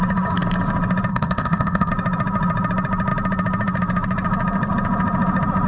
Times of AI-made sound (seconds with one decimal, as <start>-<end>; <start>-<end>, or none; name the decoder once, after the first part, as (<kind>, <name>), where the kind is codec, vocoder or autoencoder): 1.1-1.9 (codec, ZipCodec)